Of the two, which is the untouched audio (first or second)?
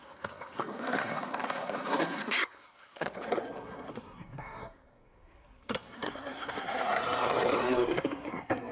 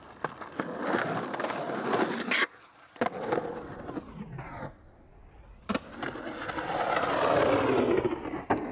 second